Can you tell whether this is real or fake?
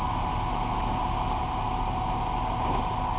real